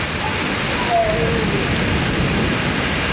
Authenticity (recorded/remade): recorded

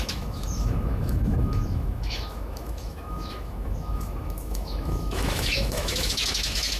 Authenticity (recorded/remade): remade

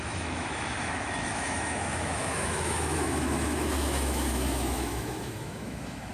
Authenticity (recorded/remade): remade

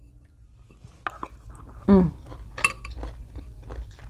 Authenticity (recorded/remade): recorded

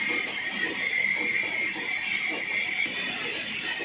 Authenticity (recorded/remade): recorded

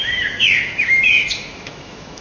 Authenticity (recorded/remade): remade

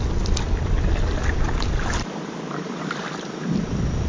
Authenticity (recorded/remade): recorded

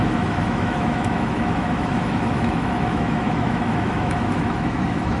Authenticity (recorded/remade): remade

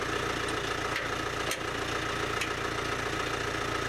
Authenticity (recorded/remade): recorded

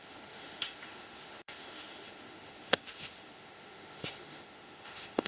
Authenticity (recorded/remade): remade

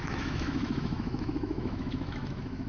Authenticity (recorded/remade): remade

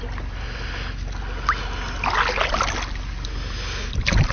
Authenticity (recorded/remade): recorded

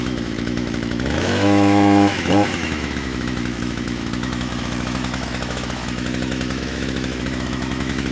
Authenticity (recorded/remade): remade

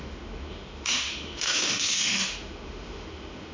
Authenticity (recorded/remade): remade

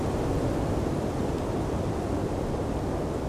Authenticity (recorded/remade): recorded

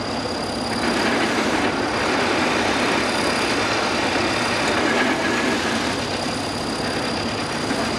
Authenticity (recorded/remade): recorded